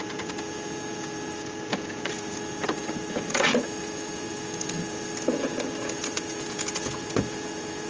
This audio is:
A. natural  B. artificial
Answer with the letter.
B